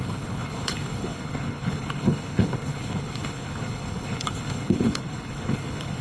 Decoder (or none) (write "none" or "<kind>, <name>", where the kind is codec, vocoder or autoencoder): codec, HILCodec